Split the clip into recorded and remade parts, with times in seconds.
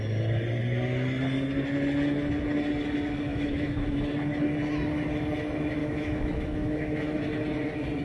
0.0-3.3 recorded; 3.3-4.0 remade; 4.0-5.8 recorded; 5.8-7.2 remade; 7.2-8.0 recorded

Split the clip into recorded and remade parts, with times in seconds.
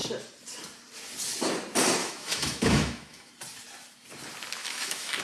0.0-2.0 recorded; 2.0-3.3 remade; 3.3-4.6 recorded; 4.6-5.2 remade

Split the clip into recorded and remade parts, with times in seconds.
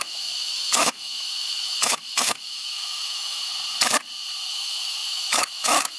0.0-3.5 remade; 3.5-4.5 recorded; 4.5-6.0 remade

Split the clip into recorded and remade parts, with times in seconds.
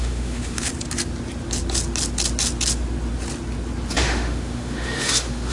0.0-0.7 remade; 0.7-4.0 recorded; 4.0-5.5 remade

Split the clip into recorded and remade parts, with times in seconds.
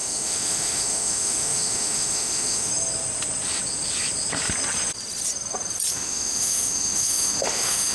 0.0-2.7 remade; 2.7-5.9 recorded; 5.9-7.9 remade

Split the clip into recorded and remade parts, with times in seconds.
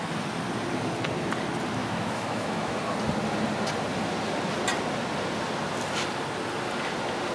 0.0-1.8 recorded; 1.8-2.8 remade; 2.8-7.3 recorded